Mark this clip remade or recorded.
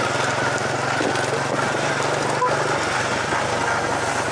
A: recorded